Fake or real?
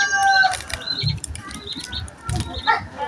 real